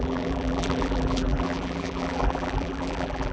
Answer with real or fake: fake